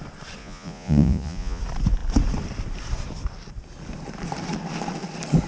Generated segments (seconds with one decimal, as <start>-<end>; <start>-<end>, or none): 0.4-1.6